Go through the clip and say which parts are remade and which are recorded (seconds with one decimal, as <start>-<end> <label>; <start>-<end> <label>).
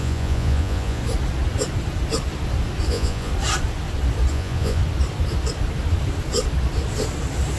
0.0-1.0 remade; 1.0-2.9 recorded; 2.9-3.3 remade; 3.3-4.3 recorded; 4.3-4.8 remade; 4.8-7.6 recorded